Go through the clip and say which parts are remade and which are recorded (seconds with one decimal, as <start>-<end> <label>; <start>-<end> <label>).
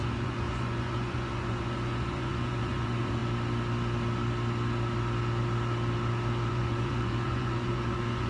0.0-3.2 remade; 3.2-6.5 recorded; 6.5-8.3 remade